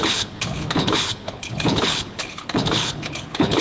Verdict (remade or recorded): remade